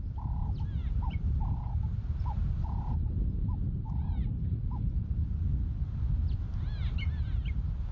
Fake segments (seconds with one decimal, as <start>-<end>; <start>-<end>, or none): 0.8-5.5